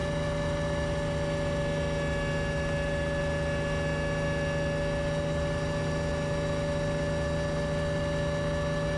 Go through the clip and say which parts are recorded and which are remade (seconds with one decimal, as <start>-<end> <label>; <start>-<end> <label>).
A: 0.0-9.0 recorded